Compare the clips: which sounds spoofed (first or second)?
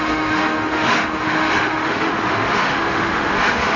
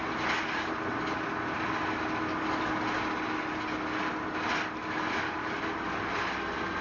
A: first